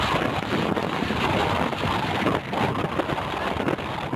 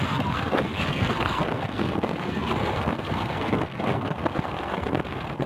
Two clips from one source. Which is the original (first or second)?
first